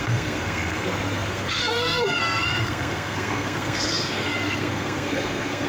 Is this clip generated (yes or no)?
yes